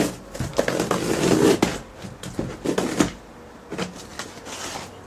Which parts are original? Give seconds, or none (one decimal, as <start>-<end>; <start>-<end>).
0.0-5.1